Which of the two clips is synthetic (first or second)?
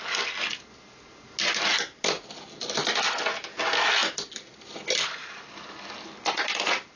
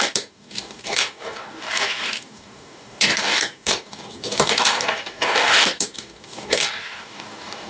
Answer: second